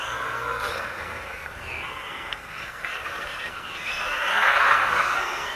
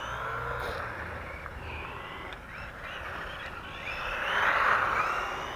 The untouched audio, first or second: second